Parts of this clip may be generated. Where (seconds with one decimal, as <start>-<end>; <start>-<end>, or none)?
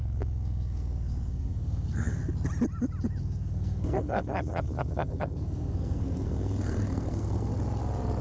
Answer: 0.0-2.2; 3.2-7.5